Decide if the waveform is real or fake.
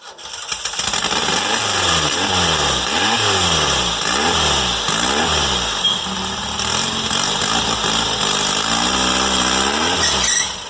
real